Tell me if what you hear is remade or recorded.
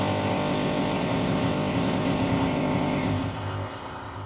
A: remade